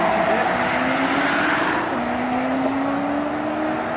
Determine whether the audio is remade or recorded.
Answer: recorded